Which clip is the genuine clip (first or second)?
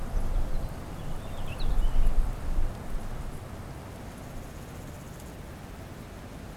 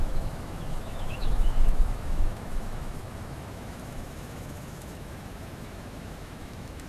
first